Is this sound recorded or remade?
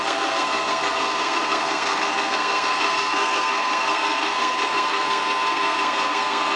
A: remade